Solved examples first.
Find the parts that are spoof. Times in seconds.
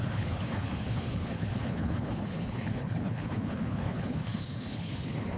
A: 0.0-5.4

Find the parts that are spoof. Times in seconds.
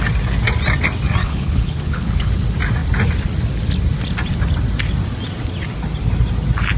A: 1.2-2.3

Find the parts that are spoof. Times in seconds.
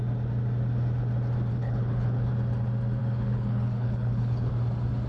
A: 1.5-2.3; 3.0-4.5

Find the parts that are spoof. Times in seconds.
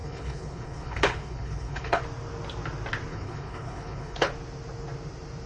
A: 0.0-2.0; 3.1-4.3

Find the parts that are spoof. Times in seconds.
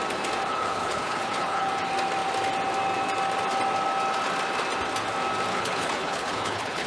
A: 0.5-1.7; 5.5-6.9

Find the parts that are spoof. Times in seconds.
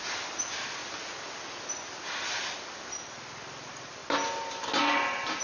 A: none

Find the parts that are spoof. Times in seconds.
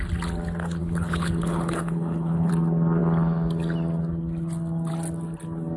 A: 0.8-2.5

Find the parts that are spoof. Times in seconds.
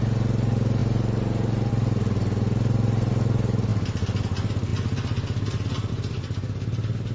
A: none